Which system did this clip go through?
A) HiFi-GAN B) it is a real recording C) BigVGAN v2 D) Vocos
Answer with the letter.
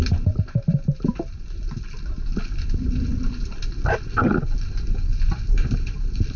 B